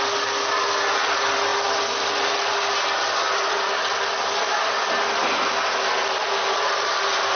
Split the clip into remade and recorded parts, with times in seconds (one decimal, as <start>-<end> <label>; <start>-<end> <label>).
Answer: 0.0-7.4 recorded